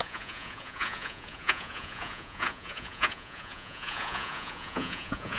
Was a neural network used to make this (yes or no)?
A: yes